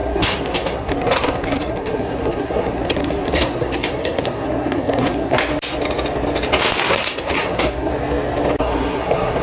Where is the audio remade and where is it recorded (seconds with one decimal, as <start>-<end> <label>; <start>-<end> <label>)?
0.0-5.5 remade; 5.5-6.8 recorded; 6.8-7.9 remade; 7.9-8.6 recorded; 8.6-9.4 remade